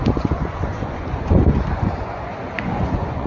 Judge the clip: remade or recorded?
remade